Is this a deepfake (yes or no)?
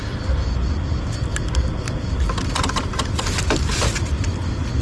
no